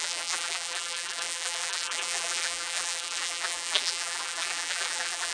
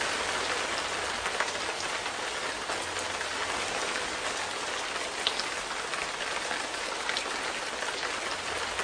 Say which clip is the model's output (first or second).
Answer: first